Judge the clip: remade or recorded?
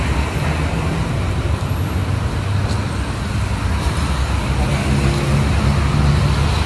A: recorded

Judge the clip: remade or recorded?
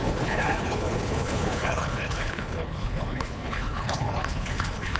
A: remade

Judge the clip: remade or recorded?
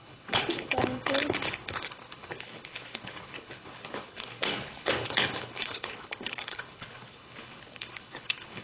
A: remade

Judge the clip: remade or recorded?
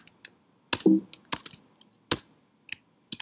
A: recorded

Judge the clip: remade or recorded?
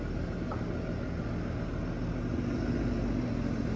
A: recorded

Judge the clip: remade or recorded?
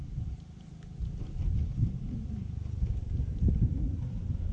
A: recorded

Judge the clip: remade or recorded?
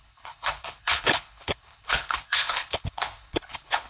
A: remade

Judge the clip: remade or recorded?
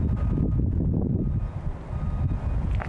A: recorded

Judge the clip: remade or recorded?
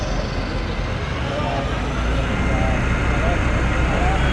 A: recorded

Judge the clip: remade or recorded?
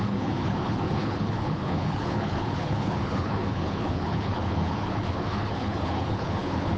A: remade